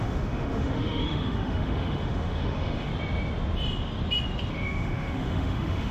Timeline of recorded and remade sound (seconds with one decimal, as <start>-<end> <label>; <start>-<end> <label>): 0.0-2.9 remade; 2.9-4.5 recorded; 4.5-5.9 remade